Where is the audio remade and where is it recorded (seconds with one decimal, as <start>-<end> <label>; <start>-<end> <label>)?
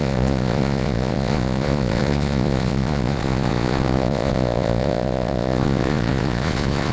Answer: 0.0-6.9 remade